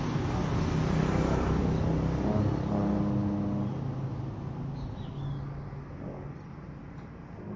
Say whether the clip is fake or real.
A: real